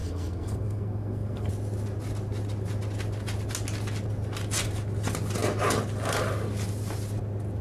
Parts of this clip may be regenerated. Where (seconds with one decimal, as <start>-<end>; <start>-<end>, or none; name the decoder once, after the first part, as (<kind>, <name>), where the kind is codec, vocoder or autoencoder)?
0.0-1.5 (codec, SNAC)